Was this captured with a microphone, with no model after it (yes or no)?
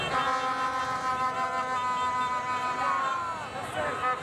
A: yes